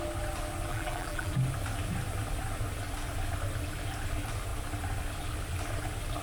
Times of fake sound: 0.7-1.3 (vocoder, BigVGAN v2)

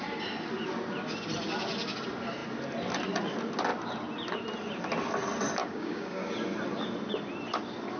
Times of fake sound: 5.6-6.3 (codec, DAC)

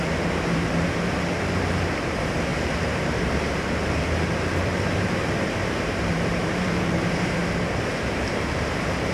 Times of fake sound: 0.0-7.4 (vocoder, BigVGAN v2); 7.9-9.1

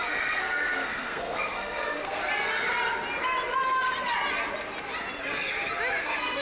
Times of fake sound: 0.0-2.2 (codec, SNAC); 6.0-6.4

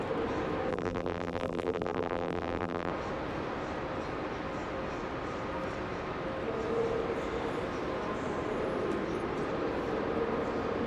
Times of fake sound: 0.7-2.9 (vocoder, BigVGAN v2)

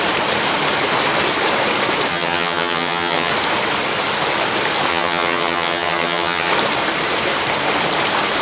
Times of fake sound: 2.1-3.3 (vocoder, HiFi-GAN); 4.9-6.5